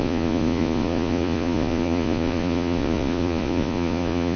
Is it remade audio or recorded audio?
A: remade